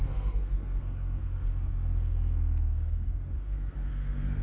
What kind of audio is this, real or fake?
fake